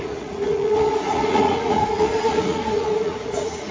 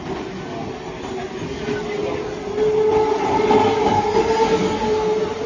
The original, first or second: second